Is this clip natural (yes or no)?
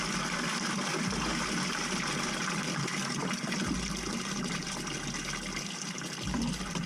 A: yes